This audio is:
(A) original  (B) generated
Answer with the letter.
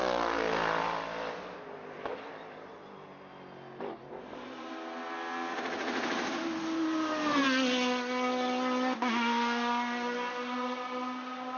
A